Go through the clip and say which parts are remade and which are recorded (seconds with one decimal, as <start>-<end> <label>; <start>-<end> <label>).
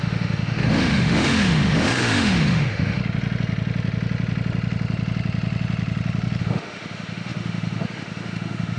0.0-3.0 remade; 3.0-6.4 recorded; 6.4-8.8 remade